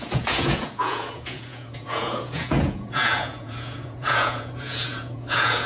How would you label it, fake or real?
fake